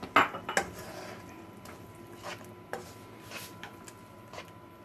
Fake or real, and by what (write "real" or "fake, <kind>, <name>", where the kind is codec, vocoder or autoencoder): real